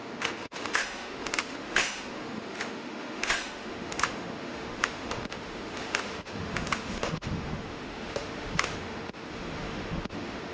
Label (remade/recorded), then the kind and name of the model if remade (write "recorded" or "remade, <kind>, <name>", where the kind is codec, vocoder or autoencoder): remade, autoencoder, DAC-VAE